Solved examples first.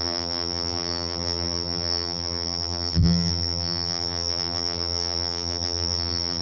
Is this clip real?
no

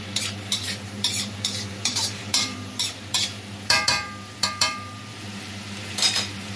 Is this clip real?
no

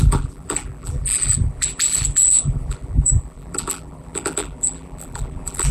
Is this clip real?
no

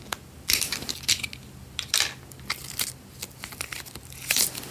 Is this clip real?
yes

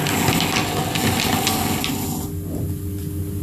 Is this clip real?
yes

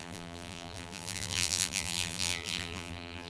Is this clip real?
no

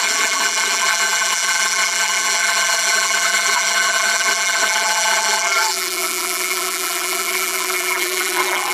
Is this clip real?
no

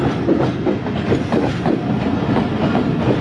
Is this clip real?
yes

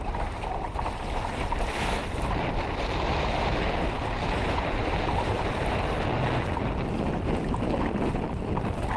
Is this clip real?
yes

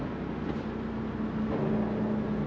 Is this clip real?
yes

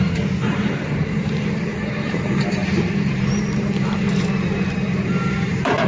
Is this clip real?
no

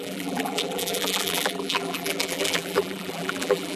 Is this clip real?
no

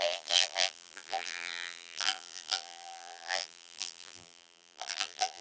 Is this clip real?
no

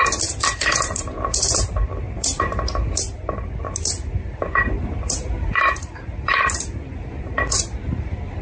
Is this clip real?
no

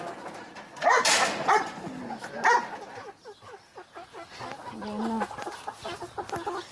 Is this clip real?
yes